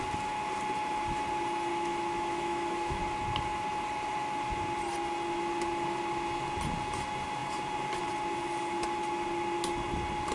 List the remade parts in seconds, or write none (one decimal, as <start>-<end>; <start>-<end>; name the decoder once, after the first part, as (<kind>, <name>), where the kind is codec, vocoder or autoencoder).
1.7-3.0 (autoencoder, DAC-VAE)